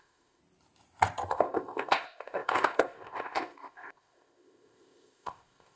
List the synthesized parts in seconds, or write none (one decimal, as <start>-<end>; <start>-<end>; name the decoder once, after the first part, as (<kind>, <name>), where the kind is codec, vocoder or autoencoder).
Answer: 0.0-0.4 (codec, ZipCodec); 1.3-5.8